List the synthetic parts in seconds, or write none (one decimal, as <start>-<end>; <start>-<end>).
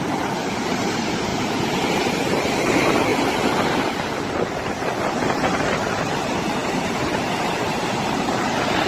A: none